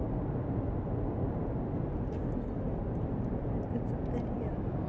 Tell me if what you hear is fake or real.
real